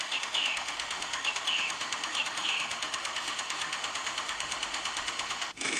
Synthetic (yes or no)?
yes